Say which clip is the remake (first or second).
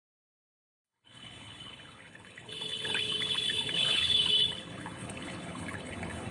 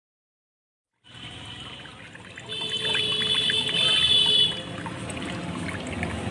first